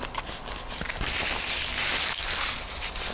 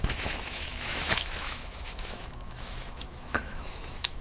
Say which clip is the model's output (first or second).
second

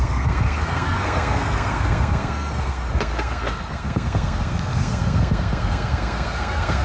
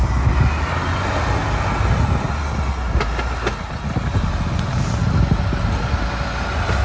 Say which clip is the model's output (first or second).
first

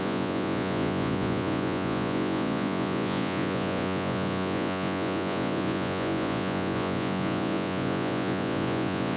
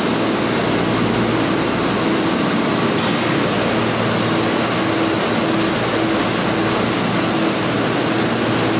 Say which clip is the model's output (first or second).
first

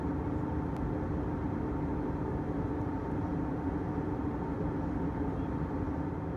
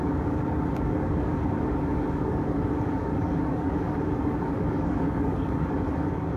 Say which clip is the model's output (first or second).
second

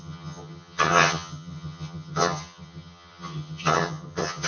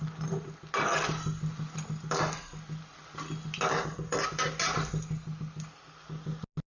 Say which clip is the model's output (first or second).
first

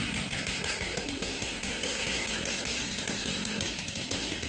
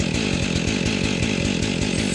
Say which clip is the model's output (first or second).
first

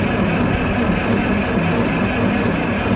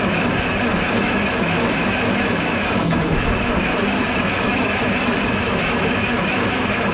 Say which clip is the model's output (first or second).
second